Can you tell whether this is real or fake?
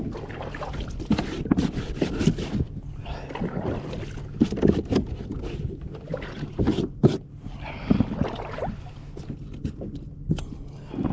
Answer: real